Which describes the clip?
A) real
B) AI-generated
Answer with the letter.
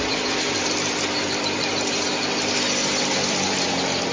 B